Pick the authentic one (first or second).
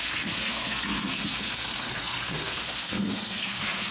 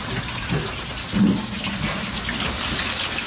second